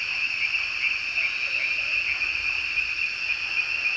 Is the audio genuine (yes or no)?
yes